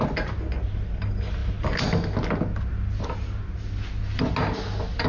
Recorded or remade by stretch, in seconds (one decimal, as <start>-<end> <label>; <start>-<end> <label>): 0.0-5.1 recorded

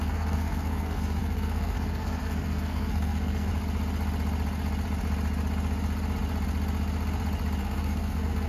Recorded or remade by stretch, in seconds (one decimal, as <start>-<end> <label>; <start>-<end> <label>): 0.0-3.5 remade; 3.5-7.6 recorded; 7.6-8.5 remade

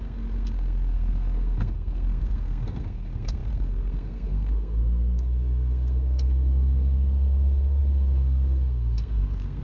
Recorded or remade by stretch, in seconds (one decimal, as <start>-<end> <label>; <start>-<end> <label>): 0.0-9.6 remade